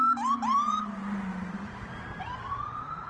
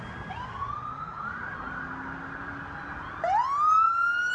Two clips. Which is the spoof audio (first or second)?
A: first